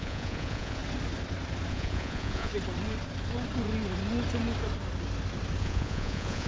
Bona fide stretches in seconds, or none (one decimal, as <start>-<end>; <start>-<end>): 0.8-1.7; 2.5-5.6